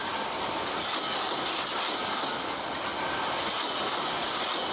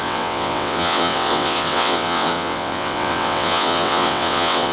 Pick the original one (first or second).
first